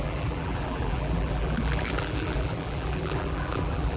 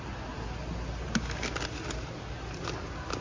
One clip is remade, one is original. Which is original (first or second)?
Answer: second